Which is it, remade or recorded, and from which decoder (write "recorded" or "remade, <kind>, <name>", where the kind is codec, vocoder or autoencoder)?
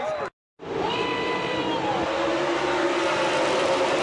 recorded